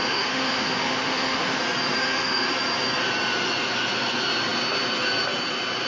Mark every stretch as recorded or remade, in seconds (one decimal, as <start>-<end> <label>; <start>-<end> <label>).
0.0-1.6 remade; 1.6-2.0 recorded; 2.0-2.5 remade; 2.5-5.9 recorded